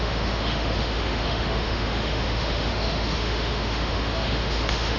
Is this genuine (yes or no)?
no